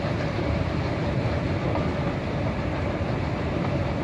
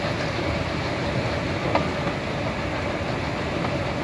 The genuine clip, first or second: second